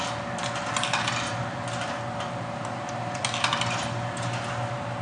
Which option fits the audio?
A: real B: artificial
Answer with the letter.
A